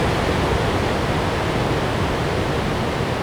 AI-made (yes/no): no